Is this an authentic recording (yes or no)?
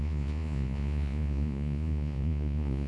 no